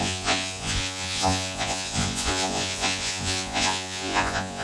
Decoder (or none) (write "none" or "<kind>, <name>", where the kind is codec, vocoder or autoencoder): vocoder, Vocos